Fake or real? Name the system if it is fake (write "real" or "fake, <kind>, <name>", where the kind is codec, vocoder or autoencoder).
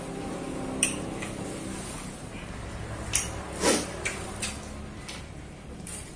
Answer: real